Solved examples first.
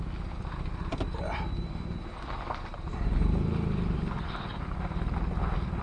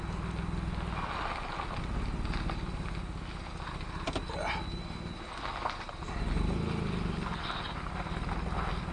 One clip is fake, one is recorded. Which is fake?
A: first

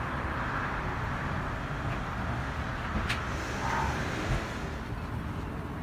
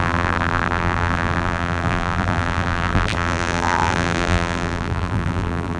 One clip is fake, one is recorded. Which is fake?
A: second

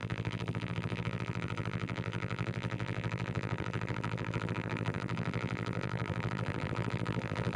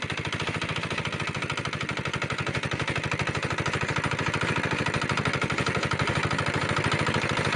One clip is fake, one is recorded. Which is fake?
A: first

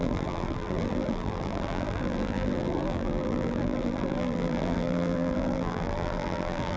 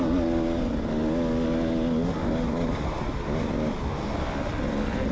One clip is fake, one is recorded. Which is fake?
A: first